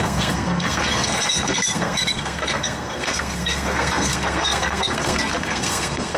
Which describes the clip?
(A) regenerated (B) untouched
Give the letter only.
A